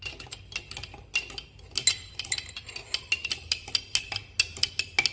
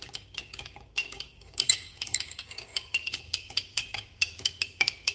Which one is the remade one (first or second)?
second